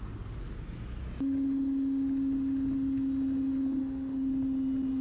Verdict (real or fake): real